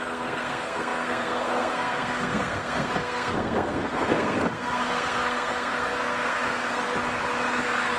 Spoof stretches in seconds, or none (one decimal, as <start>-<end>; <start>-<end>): 0.0-6.8; 7.6-8.0